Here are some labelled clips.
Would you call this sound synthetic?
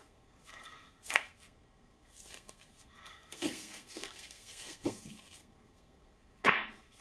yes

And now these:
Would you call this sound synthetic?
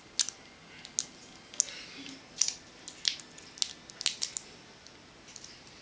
no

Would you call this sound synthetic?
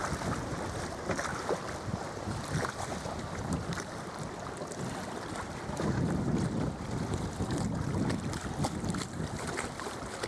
no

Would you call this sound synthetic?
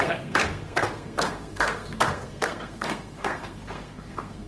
yes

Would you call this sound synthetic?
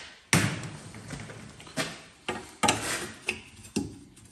no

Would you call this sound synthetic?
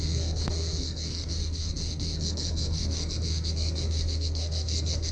yes